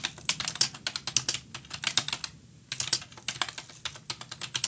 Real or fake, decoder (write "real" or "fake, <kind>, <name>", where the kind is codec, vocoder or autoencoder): real